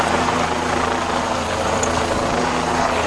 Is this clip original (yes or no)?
yes